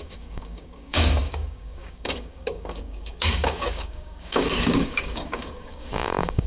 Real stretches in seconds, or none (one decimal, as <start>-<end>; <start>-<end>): none